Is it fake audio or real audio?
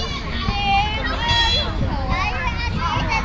real